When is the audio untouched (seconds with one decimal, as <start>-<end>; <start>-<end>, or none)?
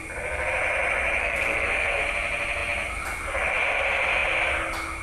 0.0-1.2; 2.0-5.0